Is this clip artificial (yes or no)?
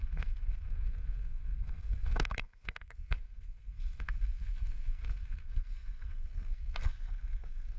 yes